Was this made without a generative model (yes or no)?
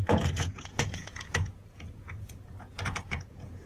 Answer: no